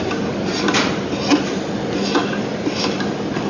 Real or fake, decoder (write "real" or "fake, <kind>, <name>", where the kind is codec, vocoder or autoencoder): real